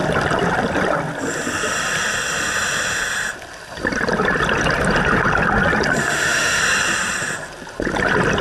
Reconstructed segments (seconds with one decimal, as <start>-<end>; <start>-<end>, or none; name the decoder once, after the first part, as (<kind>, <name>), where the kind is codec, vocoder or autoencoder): 6.0-6.6 (autoencoder, DAC-VAE)